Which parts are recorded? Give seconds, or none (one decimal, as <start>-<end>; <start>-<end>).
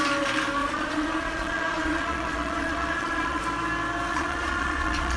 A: 0.0-0.6; 3.4-4.1